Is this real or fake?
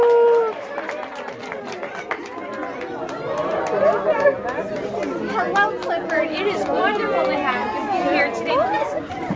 real